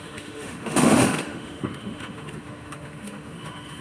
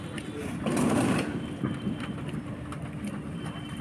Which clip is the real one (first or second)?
second